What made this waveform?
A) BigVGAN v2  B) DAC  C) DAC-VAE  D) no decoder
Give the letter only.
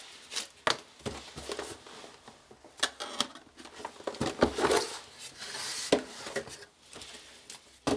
D